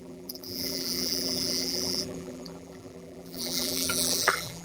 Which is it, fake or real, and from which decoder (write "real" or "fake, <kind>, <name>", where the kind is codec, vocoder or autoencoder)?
fake, vocoder, BigVGAN v2